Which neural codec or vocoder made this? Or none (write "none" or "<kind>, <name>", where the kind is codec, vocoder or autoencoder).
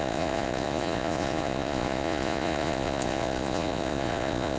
vocoder, Vocos